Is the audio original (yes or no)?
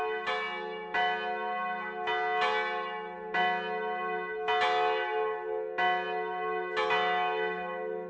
yes